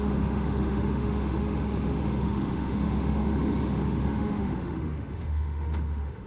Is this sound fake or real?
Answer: fake